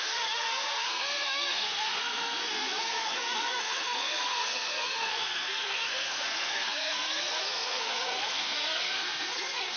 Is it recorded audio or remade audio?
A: remade